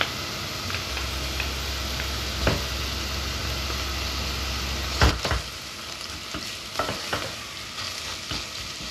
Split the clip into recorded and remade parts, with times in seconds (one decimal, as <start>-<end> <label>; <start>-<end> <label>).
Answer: 0.0-3.4 recorded; 3.4-6.7 remade; 6.7-8.9 recorded